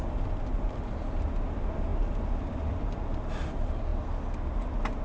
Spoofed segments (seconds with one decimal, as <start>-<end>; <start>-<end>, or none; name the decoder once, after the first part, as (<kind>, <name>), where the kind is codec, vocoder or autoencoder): none

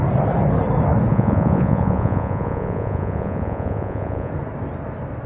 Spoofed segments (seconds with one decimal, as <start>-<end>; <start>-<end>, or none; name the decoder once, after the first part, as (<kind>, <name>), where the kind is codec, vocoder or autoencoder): 1.1-4.3 (vocoder, Vocos)

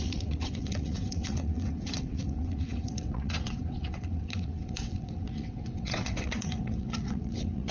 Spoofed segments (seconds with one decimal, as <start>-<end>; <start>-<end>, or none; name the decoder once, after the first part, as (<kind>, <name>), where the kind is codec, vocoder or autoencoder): 0.0-7.7 (vocoder, WaveNeXt)

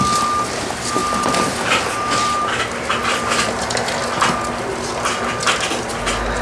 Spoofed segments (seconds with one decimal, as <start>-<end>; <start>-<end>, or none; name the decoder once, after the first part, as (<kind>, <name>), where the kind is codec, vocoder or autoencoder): none

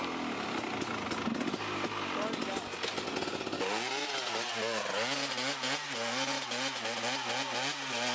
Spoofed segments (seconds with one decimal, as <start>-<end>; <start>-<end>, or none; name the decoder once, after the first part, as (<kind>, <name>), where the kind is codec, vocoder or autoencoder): none

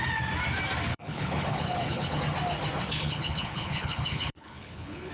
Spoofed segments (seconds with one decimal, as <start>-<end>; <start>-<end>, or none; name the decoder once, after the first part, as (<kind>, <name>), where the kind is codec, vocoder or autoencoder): 0.9-2.2 (codec, HILCodec); 2.9-5.1

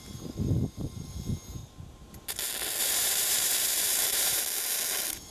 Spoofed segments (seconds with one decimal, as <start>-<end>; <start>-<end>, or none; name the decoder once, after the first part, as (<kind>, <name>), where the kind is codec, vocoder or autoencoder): 1.6-2.1 (vocoder, BigVGAN v2); 2.8-4.4

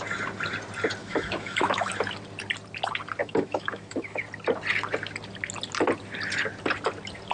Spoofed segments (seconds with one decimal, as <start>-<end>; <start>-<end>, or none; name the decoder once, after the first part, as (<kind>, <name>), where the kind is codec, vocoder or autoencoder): 1.0-1.9 (autoencoder, DAC-VAE); 3.2-4.2